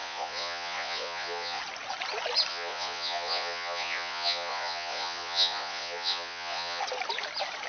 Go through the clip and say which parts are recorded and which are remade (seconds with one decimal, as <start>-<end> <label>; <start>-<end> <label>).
0.0-1.6 remade; 1.6-2.5 recorded; 2.5-6.8 remade; 6.8-7.7 recorded